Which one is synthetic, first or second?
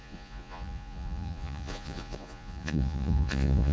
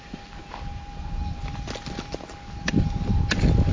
first